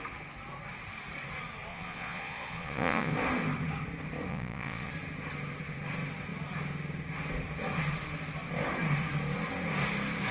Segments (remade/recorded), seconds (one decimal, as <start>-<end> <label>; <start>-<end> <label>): 0.0-1.7 recorded; 1.7-3.1 remade; 3.1-4.3 recorded; 4.3-4.9 remade; 4.9-10.3 recorded